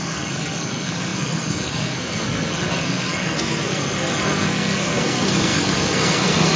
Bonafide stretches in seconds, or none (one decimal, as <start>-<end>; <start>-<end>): none